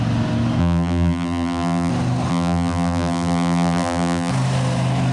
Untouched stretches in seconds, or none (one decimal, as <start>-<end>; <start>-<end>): 0.0-0.6; 1.9-2.3; 4.3-5.1